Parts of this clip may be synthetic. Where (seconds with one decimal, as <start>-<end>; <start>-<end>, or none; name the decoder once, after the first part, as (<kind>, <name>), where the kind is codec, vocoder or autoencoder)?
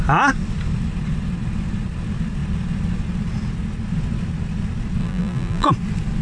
5.0-5.7 (vocoder, BigVGAN v2)